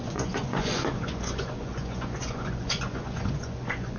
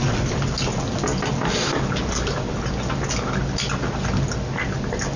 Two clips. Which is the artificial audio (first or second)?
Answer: first